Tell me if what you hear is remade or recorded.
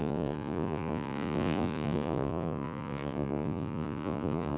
remade